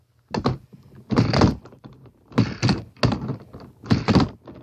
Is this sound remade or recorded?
recorded